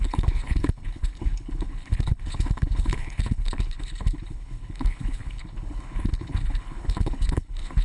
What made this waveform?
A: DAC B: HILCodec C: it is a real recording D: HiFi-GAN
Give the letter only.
B